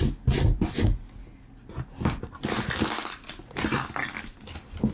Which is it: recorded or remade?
recorded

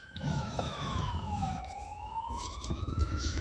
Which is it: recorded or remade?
remade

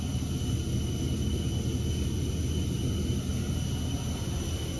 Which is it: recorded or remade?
recorded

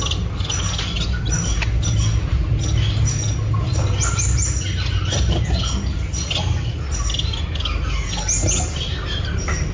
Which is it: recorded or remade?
recorded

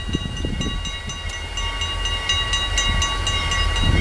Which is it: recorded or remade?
recorded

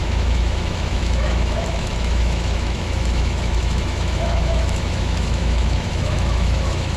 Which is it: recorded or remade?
remade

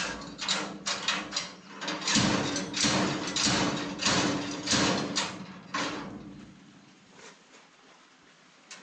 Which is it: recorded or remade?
recorded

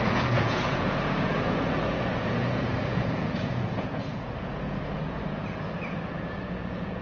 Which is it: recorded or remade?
remade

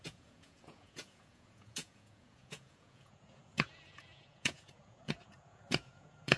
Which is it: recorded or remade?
remade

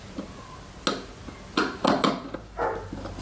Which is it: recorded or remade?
recorded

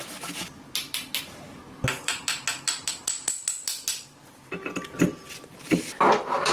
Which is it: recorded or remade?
recorded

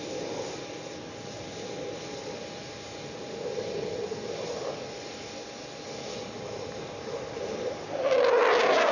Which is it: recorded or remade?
recorded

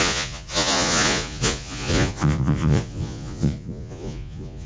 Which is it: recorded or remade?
remade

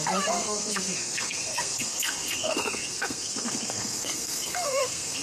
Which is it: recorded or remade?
remade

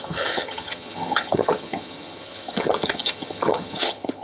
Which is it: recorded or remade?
remade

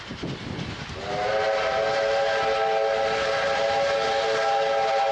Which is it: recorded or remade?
recorded